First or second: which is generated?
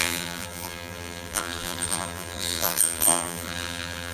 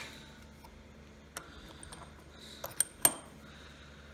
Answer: first